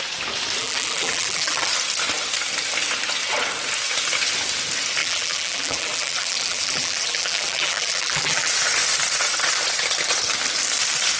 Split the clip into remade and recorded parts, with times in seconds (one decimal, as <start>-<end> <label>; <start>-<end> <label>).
0.0-0.6 recorded; 0.6-1.7 remade; 1.7-5.0 recorded; 5.0-8.5 remade; 8.5-11.2 recorded

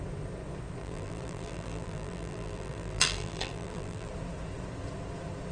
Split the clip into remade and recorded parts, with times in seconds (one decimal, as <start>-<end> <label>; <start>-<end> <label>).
0.0-0.8 recorded; 0.8-4.1 remade; 4.1-5.5 recorded

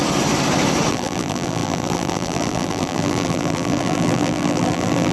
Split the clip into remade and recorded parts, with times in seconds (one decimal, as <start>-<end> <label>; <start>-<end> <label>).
0.0-0.9 recorded; 0.9-5.1 remade